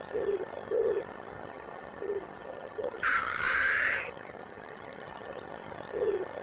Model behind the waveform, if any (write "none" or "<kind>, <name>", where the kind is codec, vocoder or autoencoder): vocoder, HiFi-GAN